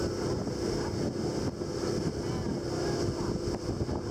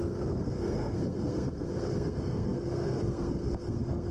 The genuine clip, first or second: first